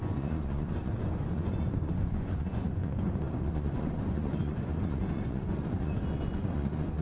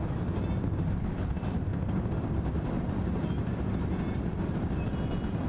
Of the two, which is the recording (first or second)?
second